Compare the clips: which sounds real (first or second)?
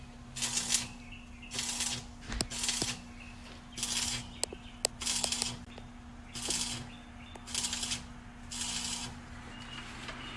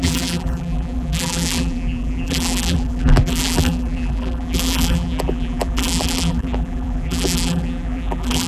first